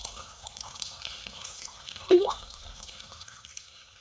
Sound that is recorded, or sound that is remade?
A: remade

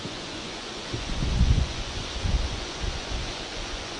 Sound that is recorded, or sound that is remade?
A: remade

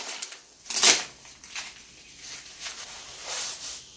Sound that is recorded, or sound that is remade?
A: recorded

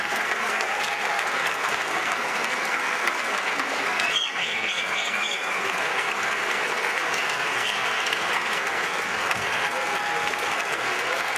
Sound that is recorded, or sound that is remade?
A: remade